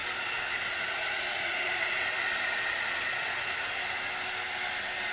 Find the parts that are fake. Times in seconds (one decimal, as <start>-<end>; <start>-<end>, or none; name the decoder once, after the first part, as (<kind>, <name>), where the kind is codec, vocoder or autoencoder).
0.0-3.7 (vocoder, Vocos)